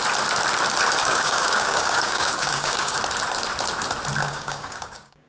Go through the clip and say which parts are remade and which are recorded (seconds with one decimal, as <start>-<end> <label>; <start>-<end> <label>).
0.0-1.0 recorded; 1.0-3.0 remade; 3.0-4.2 recorded; 4.2-5.3 remade